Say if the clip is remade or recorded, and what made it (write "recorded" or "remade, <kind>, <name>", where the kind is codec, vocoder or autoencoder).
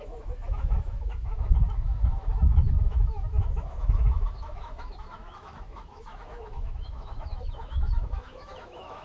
remade, autoencoder, DAC-VAE